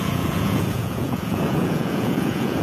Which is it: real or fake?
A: fake